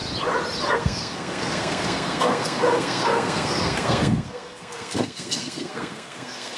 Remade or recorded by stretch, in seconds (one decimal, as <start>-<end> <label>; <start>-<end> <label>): 0.0-0.7 recorded; 0.7-6.6 remade